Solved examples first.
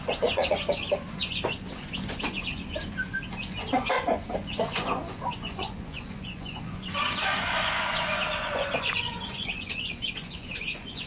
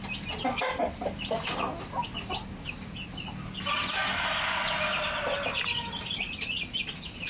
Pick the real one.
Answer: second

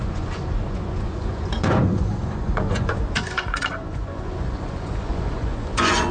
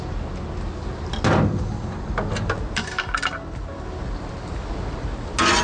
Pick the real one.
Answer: second